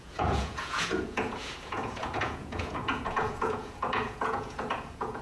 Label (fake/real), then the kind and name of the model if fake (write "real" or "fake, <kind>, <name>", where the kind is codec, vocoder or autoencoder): fake, vocoder, Vocos